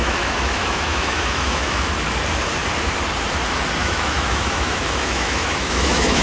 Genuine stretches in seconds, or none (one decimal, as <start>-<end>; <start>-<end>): 1.9-3.8